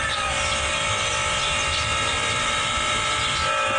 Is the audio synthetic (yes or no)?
yes